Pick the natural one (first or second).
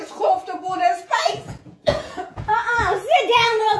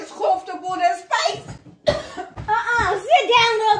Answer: second